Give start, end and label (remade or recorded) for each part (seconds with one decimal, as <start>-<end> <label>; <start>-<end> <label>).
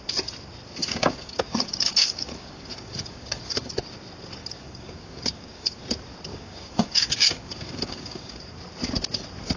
0.0-0.8 recorded; 0.8-3.7 remade; 3.7-4.4 recorded; 4.4-5.8 remade; 5.8-6.3 recorded; 6.3-8.4 remade; 8.4-9.6 recorded